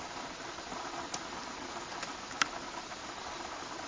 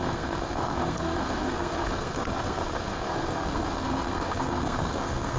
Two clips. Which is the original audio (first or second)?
first